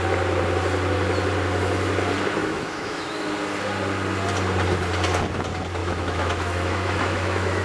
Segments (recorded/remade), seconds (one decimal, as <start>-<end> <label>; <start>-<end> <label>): 0.0-2.4 recorded; 2.4-3.3 remade; 3.3-5.8 recorded; 5.8-7.6 remade